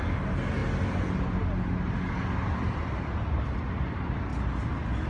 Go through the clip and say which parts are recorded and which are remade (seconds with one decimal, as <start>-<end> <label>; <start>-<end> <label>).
0.0-5.1 recorded